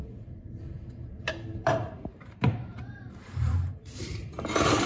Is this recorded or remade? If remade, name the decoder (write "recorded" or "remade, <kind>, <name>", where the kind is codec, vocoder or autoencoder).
remade, vocoder, BigVGAN v2